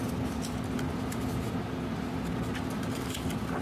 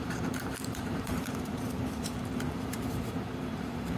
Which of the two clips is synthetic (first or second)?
second